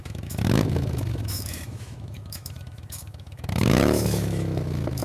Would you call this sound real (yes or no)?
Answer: no